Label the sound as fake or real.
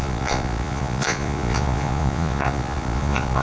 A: fake